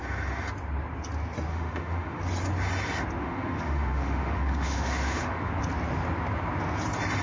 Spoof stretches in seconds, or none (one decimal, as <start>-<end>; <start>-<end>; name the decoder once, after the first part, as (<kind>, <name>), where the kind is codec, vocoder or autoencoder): 1.5-2.2 (autoencoder, DAC-VAE); 3.2-5.5